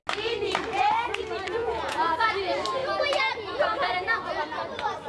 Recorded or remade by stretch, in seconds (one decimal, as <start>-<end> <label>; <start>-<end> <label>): 0.0-1.6 recorded; 1.6-2.3 remade; 2.3-3.7 recorded; 3.7-4.3 remade; 4.3-5.1 recorded